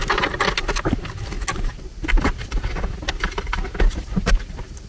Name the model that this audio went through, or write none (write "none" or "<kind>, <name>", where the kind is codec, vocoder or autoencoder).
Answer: none